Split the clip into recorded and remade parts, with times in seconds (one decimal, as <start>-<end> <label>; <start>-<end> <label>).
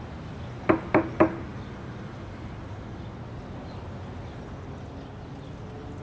0.0-1.5 recorded; 1.5-3.2 remade; 3.2-6.0 recorded